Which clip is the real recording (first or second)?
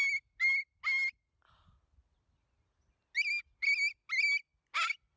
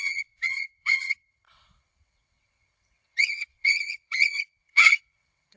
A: first